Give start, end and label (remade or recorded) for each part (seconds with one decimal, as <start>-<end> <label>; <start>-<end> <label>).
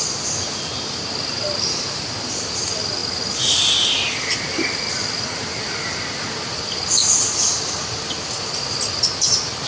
0.0-9.7 recorded